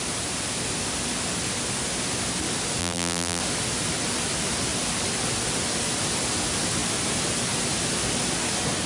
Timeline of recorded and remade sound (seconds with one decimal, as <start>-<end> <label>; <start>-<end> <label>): 0.0-2.8 recorded; 2.8-3.4 remade; 3.4-8.9 recorded